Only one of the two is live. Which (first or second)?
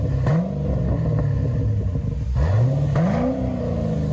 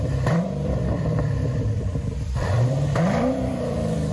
first